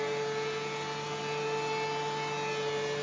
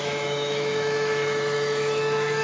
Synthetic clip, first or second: second